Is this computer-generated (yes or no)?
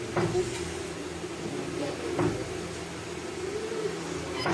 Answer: no